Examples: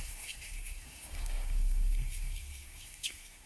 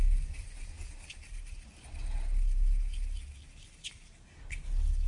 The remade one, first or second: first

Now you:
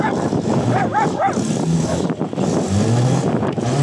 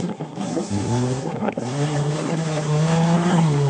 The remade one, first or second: second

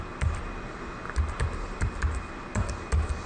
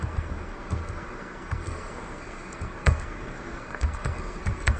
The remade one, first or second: second